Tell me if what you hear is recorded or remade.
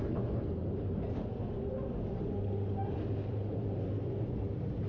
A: recorded